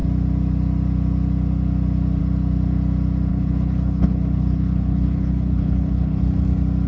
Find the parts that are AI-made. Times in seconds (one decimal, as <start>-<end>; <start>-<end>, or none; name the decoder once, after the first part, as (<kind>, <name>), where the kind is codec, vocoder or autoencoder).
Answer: 3.3-6.2 (codec, HILCodec)